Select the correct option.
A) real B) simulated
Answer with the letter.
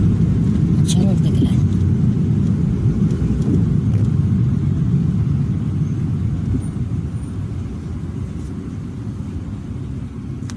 A